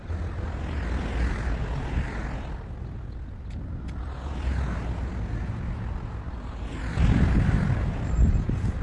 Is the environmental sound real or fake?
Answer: real